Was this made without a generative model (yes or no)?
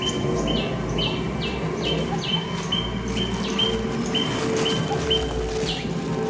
yes